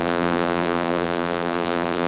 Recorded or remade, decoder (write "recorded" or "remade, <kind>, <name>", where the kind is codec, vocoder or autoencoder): remade, vocoder, BigVGAN v2